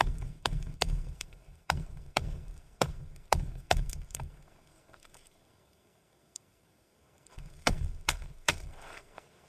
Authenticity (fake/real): fake